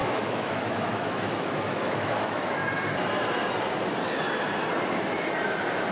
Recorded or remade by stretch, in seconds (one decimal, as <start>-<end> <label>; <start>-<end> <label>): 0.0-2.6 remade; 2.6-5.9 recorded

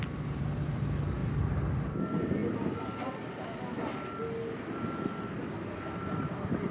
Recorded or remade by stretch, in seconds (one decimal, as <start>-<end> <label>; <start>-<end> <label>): 0.0-6.7 recorded

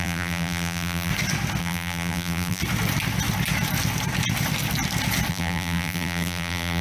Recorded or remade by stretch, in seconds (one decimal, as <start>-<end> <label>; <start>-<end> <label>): 0.0-1.1 remade; 1.1-1.6 recorded; 1.6-2.6 remade; 2.6-5.3 recorded; 5.3-6.8 remade

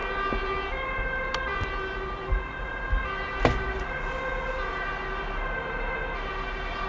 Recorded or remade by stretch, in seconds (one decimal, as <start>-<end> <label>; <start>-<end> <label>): 0.0-6.9 recorded